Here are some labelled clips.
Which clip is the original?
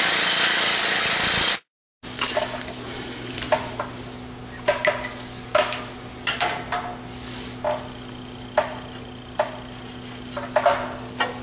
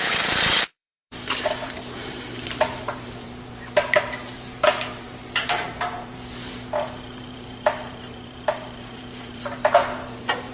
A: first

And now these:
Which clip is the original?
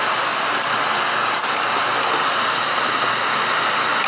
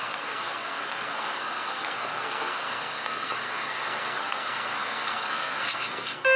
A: first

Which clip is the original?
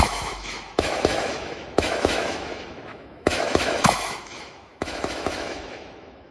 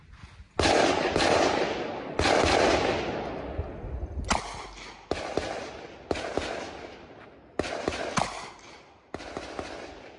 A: second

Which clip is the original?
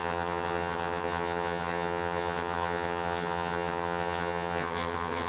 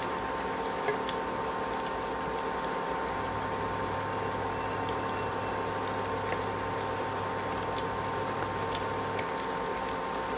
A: second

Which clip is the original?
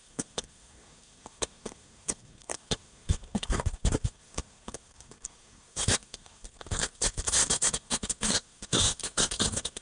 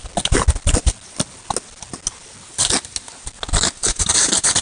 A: second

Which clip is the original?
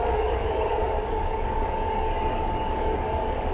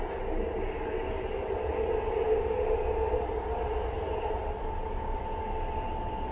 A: second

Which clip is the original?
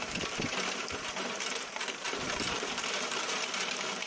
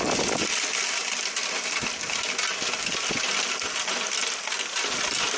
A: second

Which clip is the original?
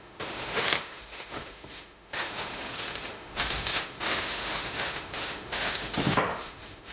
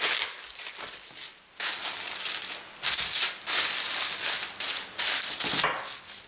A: second